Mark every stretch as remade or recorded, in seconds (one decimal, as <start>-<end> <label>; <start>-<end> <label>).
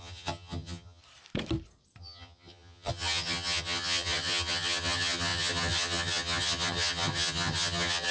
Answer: 0.0-1.0 remade; 1.0-2.0 recorded; 2.0-8.1 remade